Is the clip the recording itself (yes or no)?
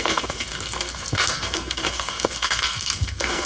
no